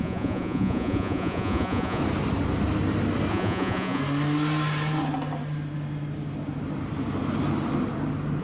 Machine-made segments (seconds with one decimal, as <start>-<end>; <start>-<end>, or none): 0.0-2.0; 3.3-4.0